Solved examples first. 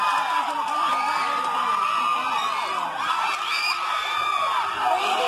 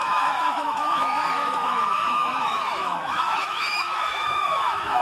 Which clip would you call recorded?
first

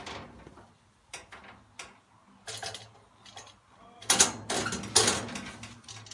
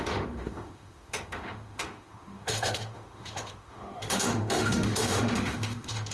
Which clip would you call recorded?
first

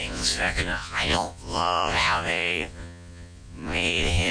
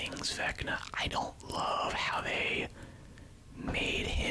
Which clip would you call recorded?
second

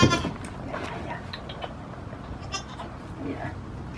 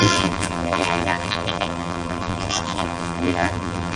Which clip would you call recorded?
first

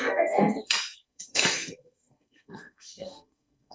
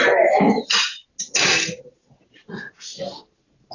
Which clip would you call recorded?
second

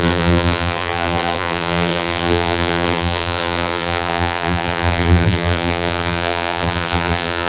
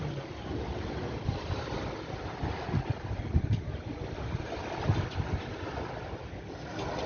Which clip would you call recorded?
second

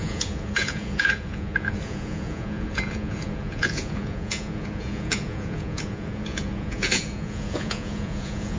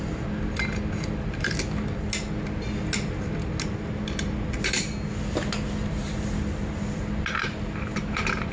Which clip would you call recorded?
second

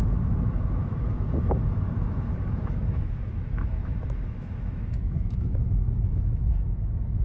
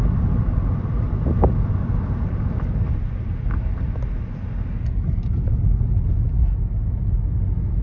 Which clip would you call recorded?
second